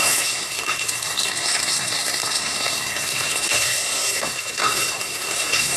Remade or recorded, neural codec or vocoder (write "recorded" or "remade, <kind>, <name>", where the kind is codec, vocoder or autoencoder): remade, codec, SNAC